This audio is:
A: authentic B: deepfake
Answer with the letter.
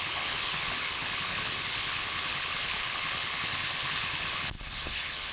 B